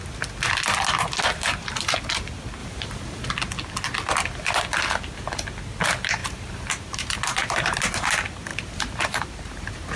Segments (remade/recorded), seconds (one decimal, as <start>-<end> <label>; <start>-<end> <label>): 0.0-2.6 recorded; 2.6-3.3 remade; 3.3-6.2 recorded; 6.2-7.8 remade; 7.8-8.5 recorded; 8.5-10.0 remade